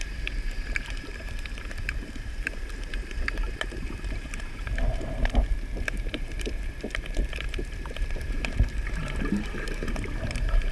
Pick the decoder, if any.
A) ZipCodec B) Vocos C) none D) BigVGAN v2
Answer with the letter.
D